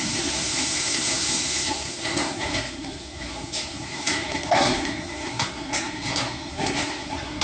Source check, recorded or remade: remade